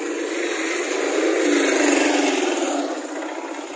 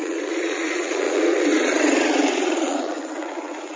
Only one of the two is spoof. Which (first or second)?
second